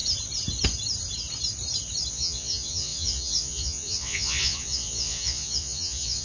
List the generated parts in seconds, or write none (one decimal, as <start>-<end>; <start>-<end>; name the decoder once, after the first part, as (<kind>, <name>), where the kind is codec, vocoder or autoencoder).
2.1-6.2 (vocoder, Vocos)